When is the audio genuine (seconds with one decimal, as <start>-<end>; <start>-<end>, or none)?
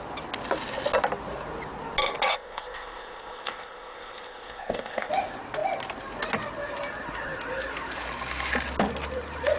0.0-2.3; 5.1-9.6